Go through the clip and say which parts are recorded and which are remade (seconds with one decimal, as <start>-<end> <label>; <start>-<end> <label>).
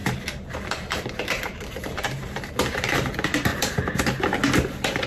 0.0-3.1 remade; 3.1-5.1 recorded